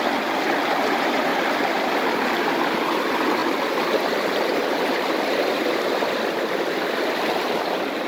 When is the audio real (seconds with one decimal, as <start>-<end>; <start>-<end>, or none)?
0.0-1.3; 1.9-3.4